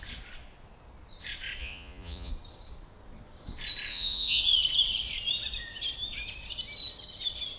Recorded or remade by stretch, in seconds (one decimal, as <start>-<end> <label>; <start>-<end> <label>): 0.0-1.6 recorded; 1.6-2.3 remade; 2.3-3.9 recorded; 3.9-4.4 remade; 4.4-7.6 recorded

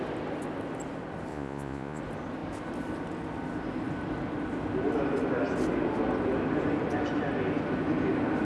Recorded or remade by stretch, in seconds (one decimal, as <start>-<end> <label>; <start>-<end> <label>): 0.0-1.3 recorded; 1.3-2.0 remade; 2.0-8.4 recorded

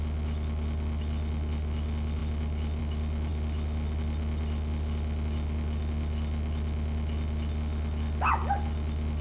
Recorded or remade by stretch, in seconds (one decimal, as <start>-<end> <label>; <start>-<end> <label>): 0.0-9.2 recorded

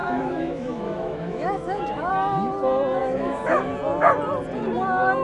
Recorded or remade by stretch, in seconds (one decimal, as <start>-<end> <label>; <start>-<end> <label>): 0.0-2.1 remade; 2.1-3.0 recorded; 3.0-3.7 remade; 3.7-5.2 recorded

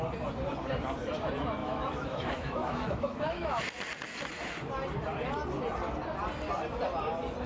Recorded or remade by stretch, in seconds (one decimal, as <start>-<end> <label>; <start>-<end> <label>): 0.0-1.6 recorded; 1.6-3.6 remade; 3.6-7.5 recorded

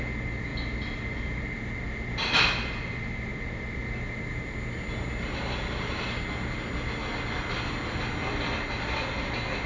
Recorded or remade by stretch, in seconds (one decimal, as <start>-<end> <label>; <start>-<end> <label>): 0.0-9.7 recorded

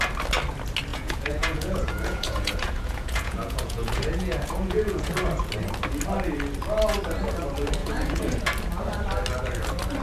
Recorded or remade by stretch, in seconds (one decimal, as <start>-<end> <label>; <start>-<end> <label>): 0.0-0.9 recorded; 0.9-5.1 remade; 5.1-7.8 recorded; 7.8-8.4 remade; 8.4-10.0 recorded

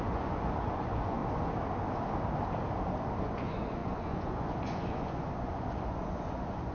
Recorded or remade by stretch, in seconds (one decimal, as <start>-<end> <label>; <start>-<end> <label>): 0.0-1.2 remade; 1.2-3.2 recorded; 3.2-6.7 remade